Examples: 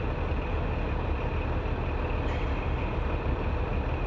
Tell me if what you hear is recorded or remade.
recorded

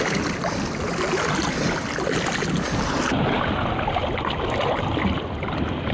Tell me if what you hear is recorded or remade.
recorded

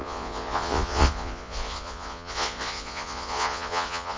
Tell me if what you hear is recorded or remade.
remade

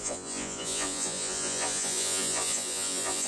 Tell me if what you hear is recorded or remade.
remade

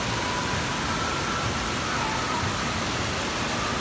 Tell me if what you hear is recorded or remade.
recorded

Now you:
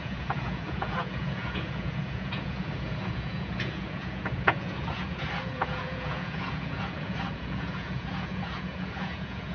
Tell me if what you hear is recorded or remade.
remade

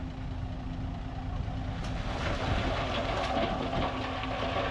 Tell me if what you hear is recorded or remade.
recorded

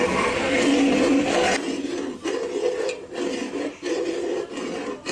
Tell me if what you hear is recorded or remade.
recorded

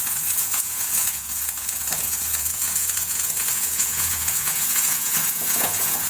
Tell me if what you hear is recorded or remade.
remade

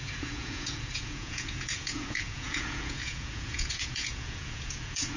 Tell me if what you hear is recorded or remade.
remade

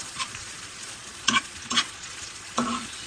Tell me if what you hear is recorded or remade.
remade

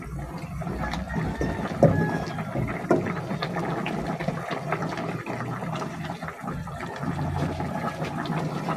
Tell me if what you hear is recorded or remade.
recorded